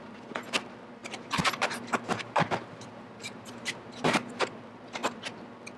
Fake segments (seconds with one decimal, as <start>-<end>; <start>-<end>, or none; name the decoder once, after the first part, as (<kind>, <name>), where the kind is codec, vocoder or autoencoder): 1.0-4.5 (vocoder, BigVGAN v2)